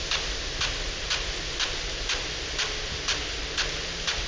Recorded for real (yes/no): yes